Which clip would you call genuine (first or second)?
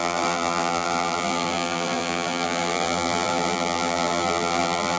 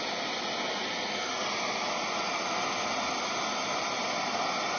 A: second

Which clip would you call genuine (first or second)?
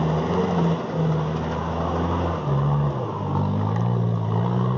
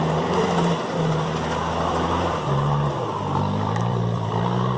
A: first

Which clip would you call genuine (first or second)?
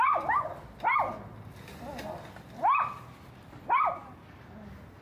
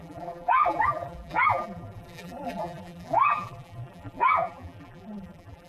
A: first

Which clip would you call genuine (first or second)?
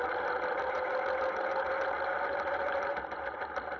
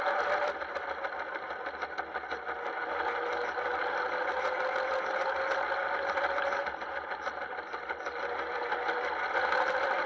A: second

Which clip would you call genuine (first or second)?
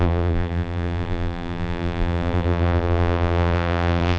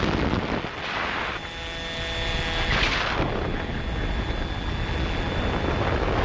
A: second